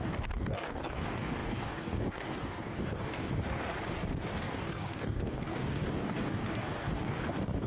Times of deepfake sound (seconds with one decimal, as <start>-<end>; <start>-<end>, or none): 0.0-3.7; 4.4-7.7